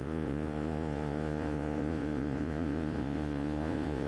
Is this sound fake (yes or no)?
yes